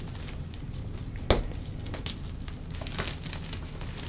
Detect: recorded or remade recorded